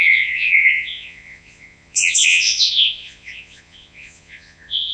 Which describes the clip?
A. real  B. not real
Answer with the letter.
B